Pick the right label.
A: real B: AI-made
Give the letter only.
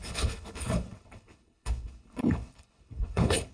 B